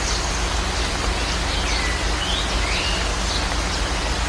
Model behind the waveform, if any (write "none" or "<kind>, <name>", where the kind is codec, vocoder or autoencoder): none